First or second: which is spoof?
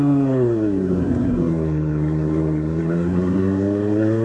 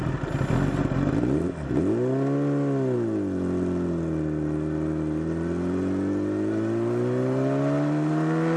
first